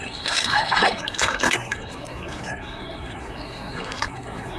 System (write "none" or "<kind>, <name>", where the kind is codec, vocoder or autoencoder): codec, SNAC